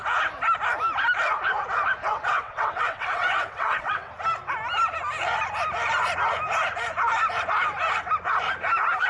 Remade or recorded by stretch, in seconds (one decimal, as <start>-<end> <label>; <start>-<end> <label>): 0.0-2.1 recorded; 2.1-4.1 remade; 4.1-9.1 recorded